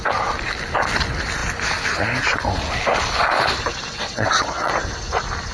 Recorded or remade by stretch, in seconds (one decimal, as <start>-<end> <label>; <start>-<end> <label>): 0.0-3.9 recorded; 3.9-4.7 remade; 4.7-5.5 recorded